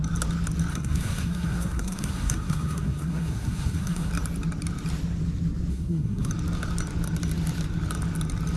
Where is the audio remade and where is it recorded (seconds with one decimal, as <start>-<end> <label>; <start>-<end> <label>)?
0.0-0.7 recorded; 0.7-4.1 remade; 4.1-5.7 recorded; 5.7-6.3 remade; 6.3-8.6 recorded